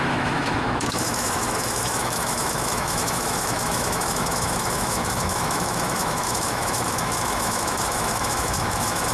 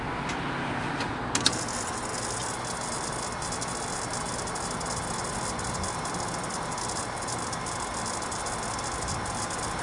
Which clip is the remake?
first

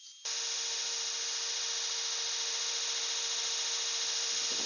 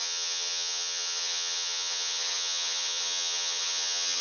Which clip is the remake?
second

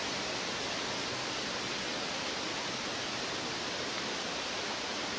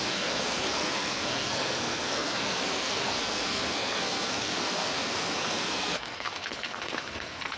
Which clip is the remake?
second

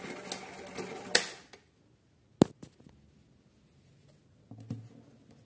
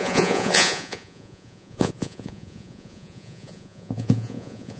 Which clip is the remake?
second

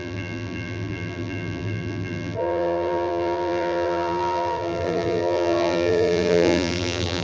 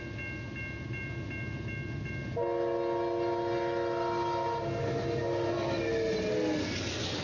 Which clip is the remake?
first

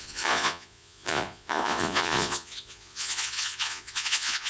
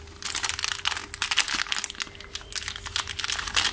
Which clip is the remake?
first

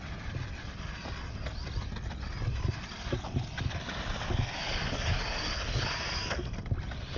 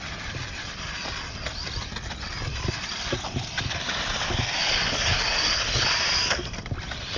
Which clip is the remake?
second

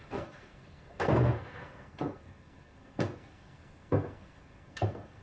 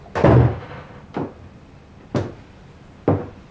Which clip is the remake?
first